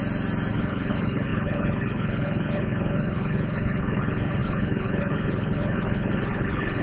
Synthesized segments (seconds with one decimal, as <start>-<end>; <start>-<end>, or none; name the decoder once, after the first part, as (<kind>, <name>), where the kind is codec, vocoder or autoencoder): 0.5-6.8 (codec, HILCodec)